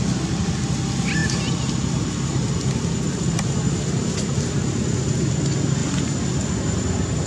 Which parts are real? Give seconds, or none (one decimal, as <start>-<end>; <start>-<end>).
0.0-7.3